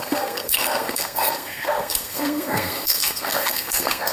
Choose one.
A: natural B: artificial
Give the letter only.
B